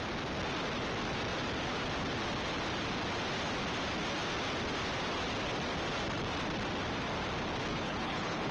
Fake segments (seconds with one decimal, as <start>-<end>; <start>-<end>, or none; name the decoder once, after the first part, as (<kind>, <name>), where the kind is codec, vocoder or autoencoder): 7.7-8.5 (codec, HILCodec)